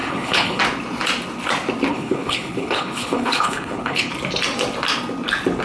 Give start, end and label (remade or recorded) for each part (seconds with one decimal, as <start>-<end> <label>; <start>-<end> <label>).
0.0-0.6 remade; 0.6-1.9 recorded; 1.9-4.1 remade; 4.1-5.6 recorded